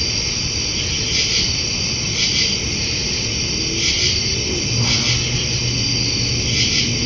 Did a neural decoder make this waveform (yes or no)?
no